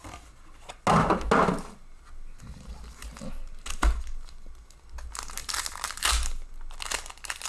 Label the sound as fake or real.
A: real